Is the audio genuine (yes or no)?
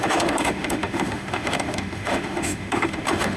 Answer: no